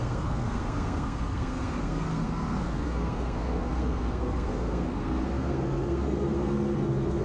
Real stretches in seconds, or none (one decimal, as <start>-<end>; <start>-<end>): none